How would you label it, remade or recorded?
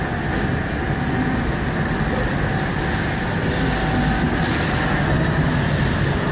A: recorded